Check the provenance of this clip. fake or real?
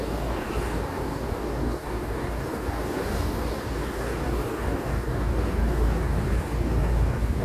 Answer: fake